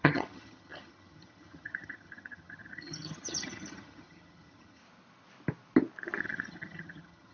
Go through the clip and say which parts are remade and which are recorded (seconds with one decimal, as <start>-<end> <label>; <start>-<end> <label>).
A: 0.0-4.8 remade; 4.8-6.2 recorded; 6.2-7.3 remade